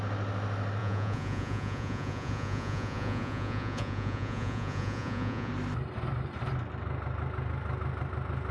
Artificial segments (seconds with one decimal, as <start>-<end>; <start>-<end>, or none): 0.8-5.5